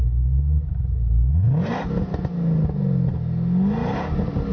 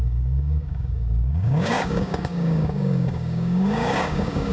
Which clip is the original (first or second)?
first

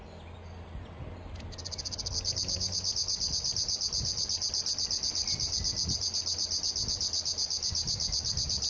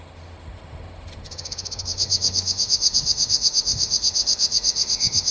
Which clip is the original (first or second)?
first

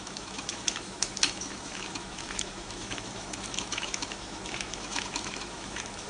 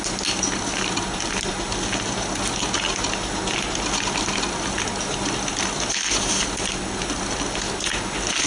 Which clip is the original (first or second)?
second